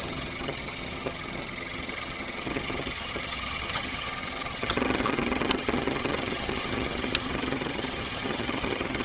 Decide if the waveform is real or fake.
fake